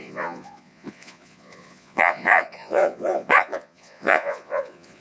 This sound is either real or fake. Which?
fake